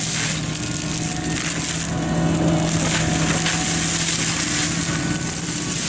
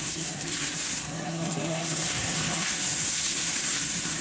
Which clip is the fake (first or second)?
second